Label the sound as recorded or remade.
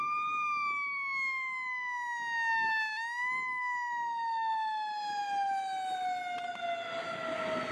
recorded